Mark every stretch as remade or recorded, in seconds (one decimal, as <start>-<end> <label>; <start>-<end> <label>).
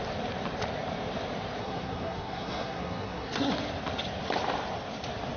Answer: 0.0-1.6 recorded; 1.6-3.5 remade; 3.5-5.4 recorded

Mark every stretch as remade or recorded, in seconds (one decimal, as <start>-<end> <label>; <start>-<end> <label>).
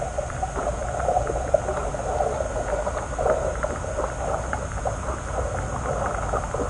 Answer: 0.0-6.7 recorded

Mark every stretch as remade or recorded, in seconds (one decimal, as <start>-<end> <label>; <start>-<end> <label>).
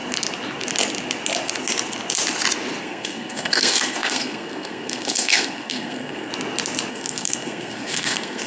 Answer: 0.0-2.8 recorded; 2.8-6.3 remade; 6.3-6.9 recorded; 6.9-8.5 remade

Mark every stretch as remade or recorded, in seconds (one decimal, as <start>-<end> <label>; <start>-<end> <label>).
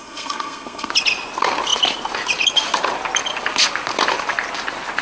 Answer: 0.0-0.9 remade; 0.9-5.0 recorded